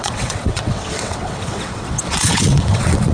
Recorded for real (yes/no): no